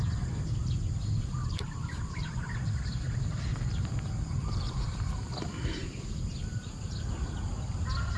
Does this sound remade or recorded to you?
recorded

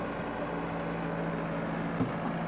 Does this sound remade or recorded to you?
recorded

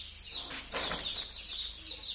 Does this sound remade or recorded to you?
recorded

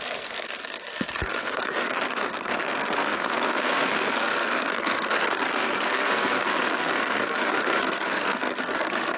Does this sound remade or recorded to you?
remade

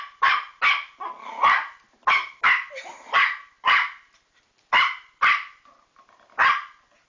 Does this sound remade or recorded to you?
recorded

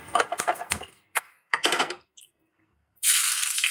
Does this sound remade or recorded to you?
remade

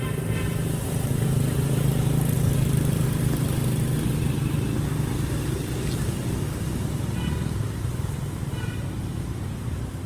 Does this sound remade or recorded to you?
recorded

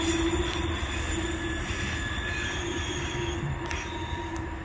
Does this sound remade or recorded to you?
remade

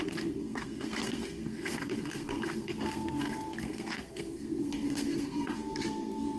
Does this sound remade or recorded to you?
remade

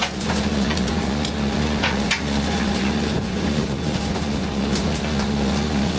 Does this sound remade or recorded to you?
remade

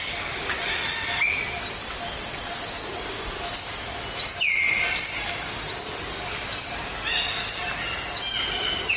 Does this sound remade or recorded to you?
recorded